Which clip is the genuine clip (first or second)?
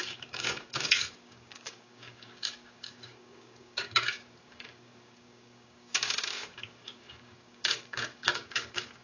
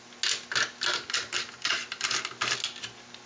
second